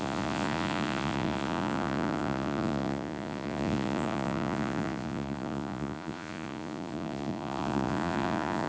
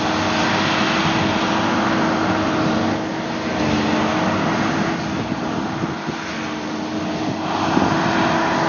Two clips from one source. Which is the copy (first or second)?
first